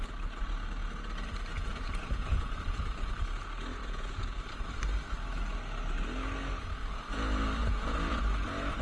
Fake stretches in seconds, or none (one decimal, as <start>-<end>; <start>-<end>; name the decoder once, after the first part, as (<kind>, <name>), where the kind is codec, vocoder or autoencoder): 1.5-3.1 (vocoder, Vocos); 3.8-4.4; 7.6-8.2